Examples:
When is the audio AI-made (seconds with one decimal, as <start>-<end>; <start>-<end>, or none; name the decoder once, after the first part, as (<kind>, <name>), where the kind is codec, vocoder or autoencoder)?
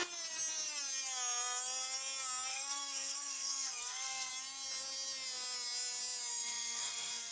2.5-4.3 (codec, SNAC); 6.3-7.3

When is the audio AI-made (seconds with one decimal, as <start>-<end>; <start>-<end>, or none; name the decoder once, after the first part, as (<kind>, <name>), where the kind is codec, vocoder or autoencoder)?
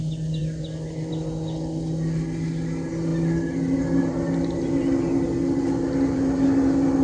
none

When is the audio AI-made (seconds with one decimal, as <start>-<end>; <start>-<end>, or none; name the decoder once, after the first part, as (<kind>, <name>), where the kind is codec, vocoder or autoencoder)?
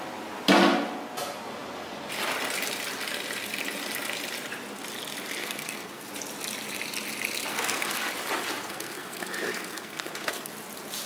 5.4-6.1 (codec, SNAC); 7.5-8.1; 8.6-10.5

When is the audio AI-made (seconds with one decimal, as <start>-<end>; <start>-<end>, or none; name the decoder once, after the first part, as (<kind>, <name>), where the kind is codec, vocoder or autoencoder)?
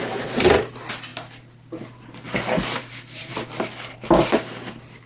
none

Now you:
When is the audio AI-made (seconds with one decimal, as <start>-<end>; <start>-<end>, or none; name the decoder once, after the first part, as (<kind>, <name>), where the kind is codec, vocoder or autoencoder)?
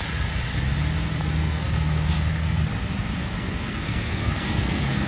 1.4-2.6 (codec, SNAC); 3.2-5.1